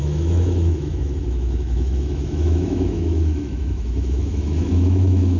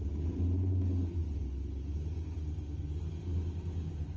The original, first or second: second